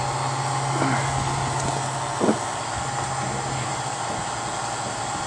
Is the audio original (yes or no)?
yes